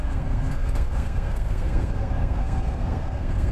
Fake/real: fake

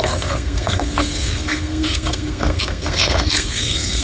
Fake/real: fake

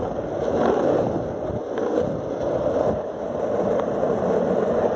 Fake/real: real